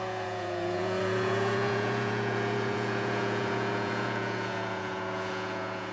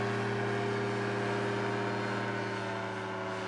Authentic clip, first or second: second